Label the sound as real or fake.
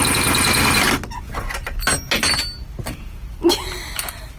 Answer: real